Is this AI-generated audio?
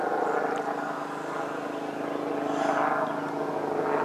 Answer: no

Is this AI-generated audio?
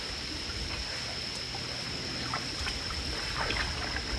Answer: no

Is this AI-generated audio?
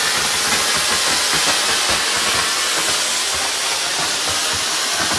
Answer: no